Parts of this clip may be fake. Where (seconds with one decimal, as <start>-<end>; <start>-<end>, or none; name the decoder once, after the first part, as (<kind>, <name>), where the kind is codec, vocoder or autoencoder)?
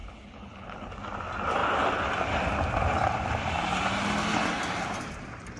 0.0-0.9 (codec, HILCodec)